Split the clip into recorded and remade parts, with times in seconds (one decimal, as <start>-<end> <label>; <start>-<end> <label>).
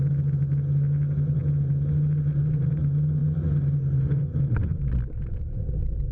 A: 0.0-6.1 recorded